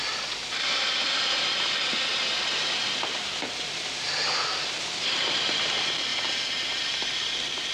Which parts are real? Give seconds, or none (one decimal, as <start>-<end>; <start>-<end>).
2.1-3.1; 6.1-6.8